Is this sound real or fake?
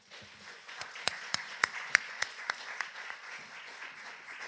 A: fake